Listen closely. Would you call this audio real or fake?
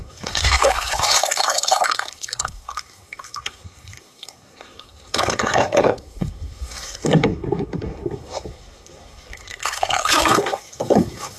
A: fake